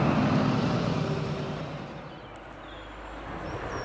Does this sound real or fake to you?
real